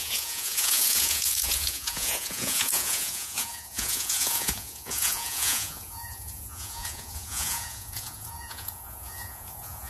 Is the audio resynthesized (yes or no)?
yes